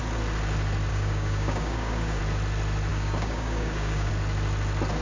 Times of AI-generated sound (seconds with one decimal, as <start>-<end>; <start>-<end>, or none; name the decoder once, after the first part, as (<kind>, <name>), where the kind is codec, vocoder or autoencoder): 0.9-2.2 (codec, DAC); 2.9-4.1